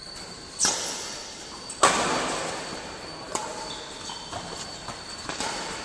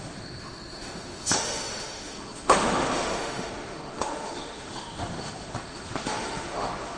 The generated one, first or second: second